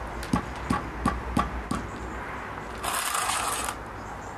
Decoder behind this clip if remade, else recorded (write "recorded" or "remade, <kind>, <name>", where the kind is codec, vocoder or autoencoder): recorded